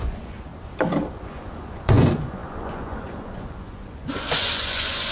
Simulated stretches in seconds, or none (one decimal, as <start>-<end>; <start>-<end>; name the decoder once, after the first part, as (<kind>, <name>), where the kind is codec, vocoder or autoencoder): 0.0-0.5 (vocoder, Vocos); 1.0-5.1